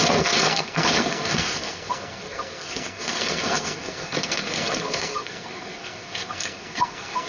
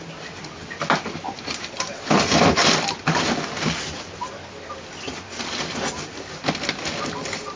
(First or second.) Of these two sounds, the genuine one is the second